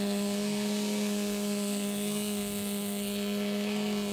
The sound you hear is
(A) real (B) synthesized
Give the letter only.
B